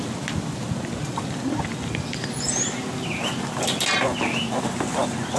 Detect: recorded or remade recorded